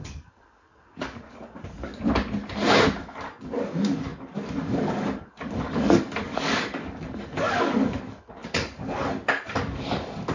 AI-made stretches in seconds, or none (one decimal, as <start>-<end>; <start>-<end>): 0.0-1.9; 3.0-10.3